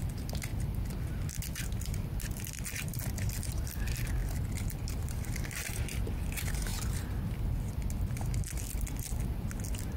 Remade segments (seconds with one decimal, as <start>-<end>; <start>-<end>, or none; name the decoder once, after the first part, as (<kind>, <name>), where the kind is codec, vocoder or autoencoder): 4.2-5.8 (vocoder, BigVGAN v2); 6.7-7.7